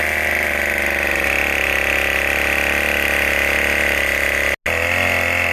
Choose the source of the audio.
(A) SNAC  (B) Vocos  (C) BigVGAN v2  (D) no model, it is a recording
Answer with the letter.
D